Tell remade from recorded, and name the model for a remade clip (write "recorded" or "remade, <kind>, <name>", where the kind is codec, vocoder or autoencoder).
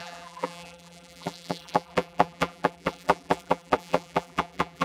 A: remade, vocoder, BigVGAN v2